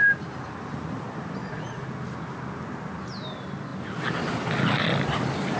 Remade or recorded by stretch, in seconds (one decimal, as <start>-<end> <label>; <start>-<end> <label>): 0.0-1.4 recorded; 1.4-1.9 remade; 1.9-5.6 recorded